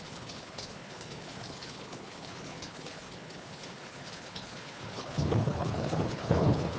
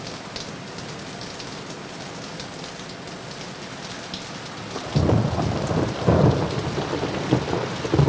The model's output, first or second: first